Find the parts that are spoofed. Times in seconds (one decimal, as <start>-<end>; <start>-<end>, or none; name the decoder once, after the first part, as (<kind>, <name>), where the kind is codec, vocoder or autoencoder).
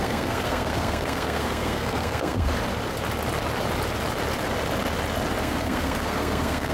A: 0.0-2.5 (codec, SNAC); 5.4-6.7